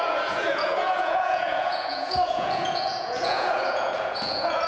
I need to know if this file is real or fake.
fake